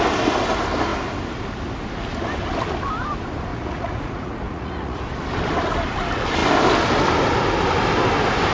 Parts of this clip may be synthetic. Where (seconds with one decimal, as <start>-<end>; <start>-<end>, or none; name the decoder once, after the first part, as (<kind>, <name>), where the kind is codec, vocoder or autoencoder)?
3.5-5.0 (vocoder, Vocos)